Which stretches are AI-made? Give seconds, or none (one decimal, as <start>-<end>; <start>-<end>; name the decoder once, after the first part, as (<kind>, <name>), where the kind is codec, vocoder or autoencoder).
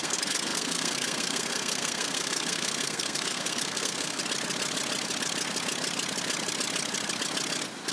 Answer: 0.0-4.2 (codec, SNAC)